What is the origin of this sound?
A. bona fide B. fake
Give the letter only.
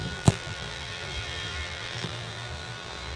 B